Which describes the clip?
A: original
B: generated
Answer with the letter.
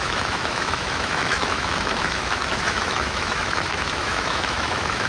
B